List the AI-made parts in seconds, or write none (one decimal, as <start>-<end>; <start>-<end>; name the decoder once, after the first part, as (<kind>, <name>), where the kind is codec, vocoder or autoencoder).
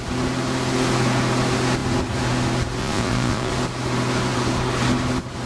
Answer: 2.8-3.5 (vocoder, Vocos)